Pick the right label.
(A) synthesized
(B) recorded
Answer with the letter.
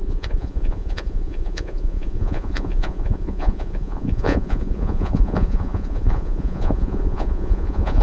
A